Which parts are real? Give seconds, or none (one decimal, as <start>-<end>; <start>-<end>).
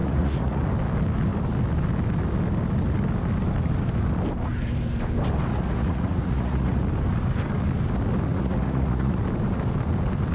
0.6-5.5; 6.8-8.3; 9.2-10.3